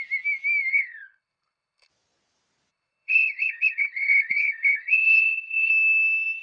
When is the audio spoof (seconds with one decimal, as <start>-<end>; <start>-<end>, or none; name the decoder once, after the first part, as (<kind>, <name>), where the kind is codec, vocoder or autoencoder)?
0.7-1.9 (codec, HILCodec); 2.7-5.7